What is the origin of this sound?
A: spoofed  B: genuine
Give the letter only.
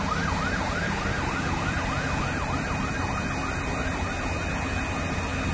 B